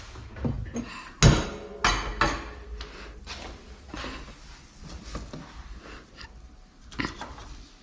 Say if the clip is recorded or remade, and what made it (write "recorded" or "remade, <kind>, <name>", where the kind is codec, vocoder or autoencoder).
recorded